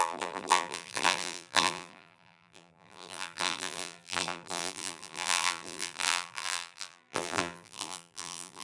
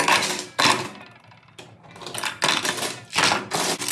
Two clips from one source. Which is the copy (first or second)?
first